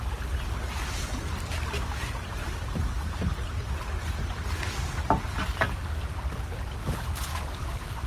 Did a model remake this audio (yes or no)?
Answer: no